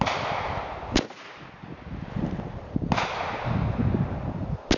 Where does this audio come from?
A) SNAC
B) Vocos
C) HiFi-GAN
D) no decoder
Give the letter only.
D